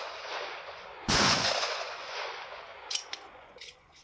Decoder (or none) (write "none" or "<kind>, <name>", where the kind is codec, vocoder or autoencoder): vocoder, Vocos